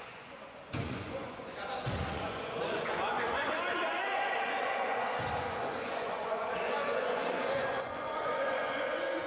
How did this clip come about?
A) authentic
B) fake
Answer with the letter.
B